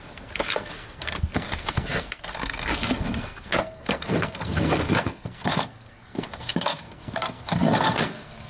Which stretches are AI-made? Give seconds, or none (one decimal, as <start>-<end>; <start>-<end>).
0.0-8.5